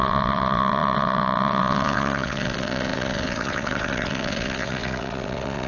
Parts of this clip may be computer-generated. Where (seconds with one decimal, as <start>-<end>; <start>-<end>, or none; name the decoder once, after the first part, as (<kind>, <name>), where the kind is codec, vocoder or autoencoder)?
0.0-5.7 (vocoder, WaveNeXt)